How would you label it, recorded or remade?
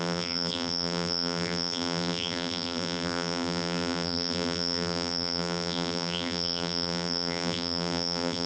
remade